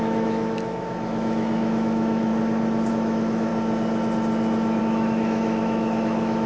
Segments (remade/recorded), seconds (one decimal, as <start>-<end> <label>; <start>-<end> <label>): 0.0-2.3 remade; 2.3-2.9 recorded; 2.9-3.5 remade; 3.5-4.8 recorded; 4.8-6.5 remade